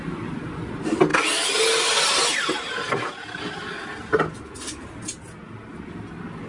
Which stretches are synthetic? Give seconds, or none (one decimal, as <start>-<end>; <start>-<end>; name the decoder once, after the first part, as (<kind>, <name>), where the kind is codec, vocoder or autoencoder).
none